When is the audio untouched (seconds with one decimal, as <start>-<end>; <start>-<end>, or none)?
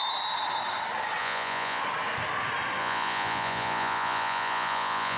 0.0-1.2; 1.8-2.8